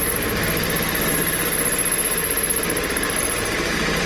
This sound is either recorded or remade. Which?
recorded